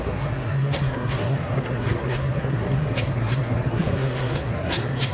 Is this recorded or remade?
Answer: remade